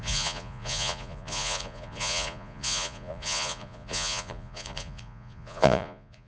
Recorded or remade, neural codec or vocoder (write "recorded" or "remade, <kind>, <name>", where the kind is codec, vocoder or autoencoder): remade, vocoder, Vocos